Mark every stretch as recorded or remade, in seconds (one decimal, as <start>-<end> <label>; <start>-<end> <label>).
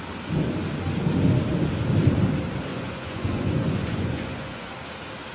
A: 0.0-2.7 recorded; 2.7-4.7 remade; 4.7-5.3 recorded